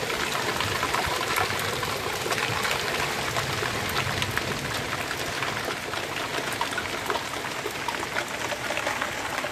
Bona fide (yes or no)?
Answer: yes